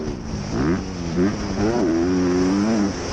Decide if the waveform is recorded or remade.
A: recorded